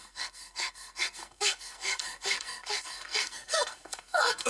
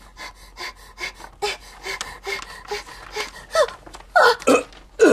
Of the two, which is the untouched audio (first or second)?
second